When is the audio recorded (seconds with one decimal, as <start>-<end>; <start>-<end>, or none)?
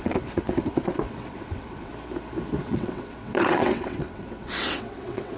1.9-2.6